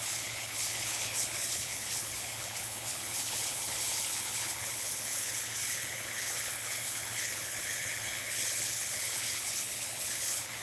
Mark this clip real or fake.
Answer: fake